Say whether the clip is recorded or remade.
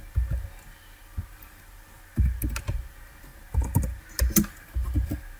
recorded